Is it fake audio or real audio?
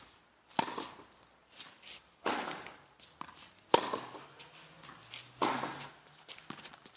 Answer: fake